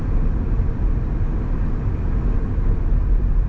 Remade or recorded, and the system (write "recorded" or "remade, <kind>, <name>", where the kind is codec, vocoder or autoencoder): recorded